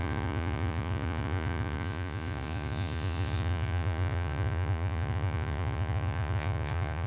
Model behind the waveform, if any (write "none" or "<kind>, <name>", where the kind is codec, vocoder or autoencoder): vocoder, Vocos